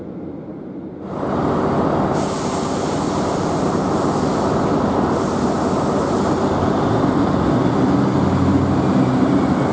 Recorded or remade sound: recorded